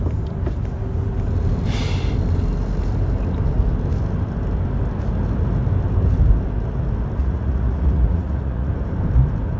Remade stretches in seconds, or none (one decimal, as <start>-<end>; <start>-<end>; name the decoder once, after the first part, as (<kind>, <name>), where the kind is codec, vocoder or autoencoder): 7.2-8.7 (vocoder, Vocos)

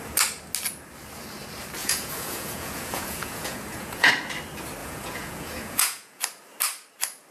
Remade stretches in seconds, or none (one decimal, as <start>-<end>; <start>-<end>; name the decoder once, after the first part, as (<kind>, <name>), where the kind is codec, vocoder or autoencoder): 1.8-4.1 (vocoder, Vocos); 4.8-6.2

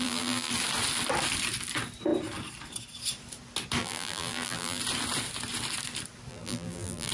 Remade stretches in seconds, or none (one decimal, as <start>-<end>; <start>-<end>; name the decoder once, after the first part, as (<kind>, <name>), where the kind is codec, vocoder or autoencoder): 0.0-0.5 (vocoder, BigVGAN v2); 3.8-4.8; 6.3-7.1

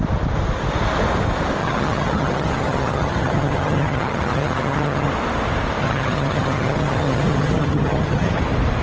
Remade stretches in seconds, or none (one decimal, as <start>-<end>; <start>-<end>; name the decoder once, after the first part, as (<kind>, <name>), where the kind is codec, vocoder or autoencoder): 1.6-5.1 (vocoder, HiFi-GAN); 5.8-8.4

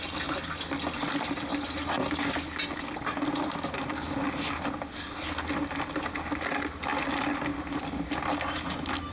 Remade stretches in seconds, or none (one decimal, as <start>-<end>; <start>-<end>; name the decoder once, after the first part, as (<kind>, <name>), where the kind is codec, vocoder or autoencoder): none

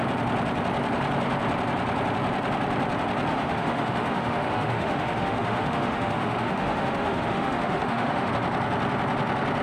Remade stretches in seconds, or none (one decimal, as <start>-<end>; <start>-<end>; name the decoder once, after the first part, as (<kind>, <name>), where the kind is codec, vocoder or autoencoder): 3.3-8.3 (autoencoder, DAC-VAE)